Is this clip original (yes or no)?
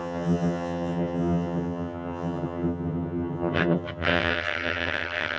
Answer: no